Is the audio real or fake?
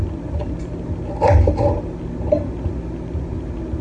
real